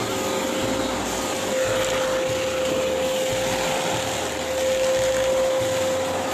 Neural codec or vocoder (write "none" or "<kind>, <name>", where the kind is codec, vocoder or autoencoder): none